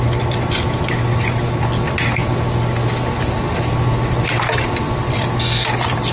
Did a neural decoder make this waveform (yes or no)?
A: no